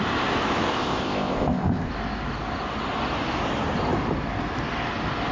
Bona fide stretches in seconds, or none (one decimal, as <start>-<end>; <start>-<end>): 0.0-0.7; 1.9-5.3